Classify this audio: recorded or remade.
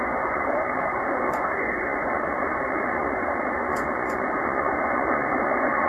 remade